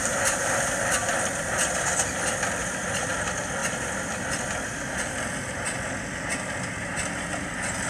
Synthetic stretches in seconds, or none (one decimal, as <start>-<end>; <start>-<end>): 0.0-0.6; 2.6-3.1